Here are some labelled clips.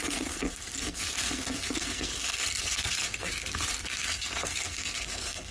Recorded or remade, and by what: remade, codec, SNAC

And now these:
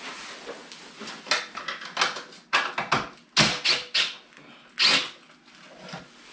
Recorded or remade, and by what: recorded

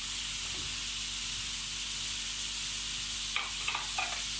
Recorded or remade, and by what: recorded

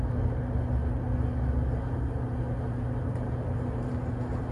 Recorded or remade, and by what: recorded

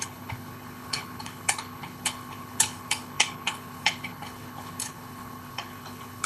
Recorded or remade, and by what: remade, codec, HILCodec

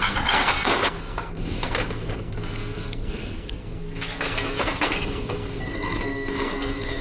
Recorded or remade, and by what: remade, codec, SNAC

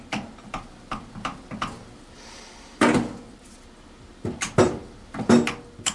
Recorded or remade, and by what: recorded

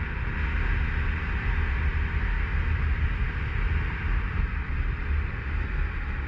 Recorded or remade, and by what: recorded